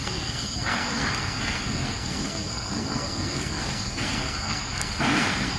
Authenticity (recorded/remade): remade